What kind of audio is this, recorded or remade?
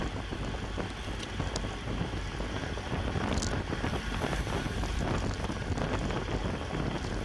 recorded